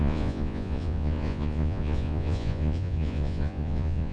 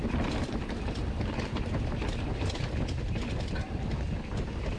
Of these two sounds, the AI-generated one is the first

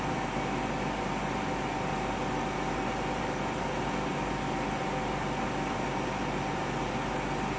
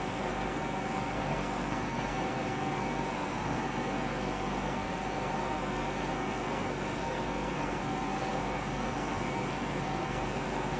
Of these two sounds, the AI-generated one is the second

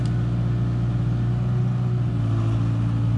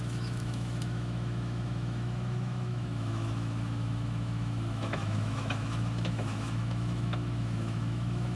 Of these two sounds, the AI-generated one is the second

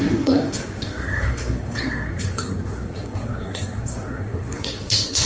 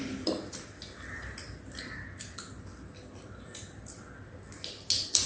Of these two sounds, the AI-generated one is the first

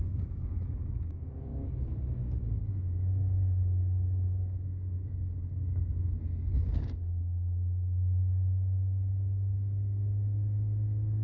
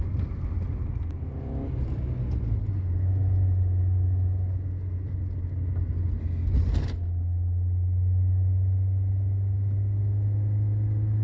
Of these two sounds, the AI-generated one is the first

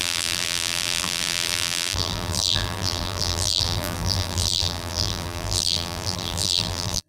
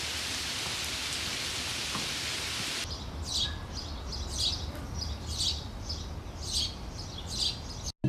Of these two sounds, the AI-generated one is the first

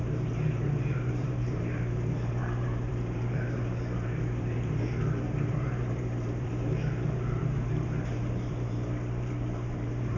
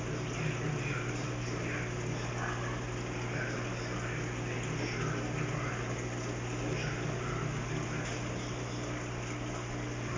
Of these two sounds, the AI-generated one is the first